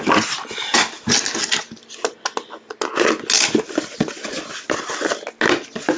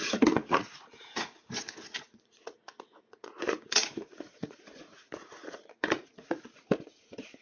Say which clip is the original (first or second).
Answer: first